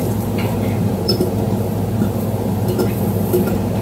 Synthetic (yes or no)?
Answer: yes